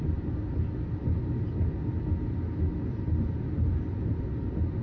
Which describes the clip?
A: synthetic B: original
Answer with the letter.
B